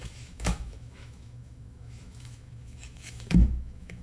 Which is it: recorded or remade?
remade